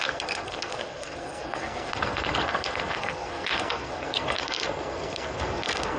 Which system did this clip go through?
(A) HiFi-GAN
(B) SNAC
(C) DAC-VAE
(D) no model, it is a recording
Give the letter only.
B